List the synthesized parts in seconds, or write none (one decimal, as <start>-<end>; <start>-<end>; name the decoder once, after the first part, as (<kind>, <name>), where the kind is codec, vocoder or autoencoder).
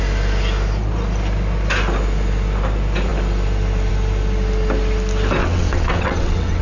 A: 5.4-6.6 (vocoder, WaveNeXt)